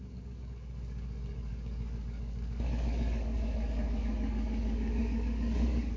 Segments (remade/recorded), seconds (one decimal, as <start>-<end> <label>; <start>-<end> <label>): 0.0-6.0 remade